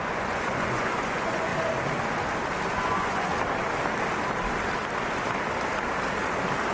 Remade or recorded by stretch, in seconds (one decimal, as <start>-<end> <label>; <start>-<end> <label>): 0.0-1.5 remade; 1.5-2.7 recorded; 2.7-3.3 remade; 3.3-6.7 recorded